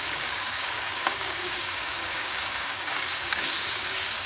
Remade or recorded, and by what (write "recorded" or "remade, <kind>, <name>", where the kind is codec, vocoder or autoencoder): remade, codec, DAC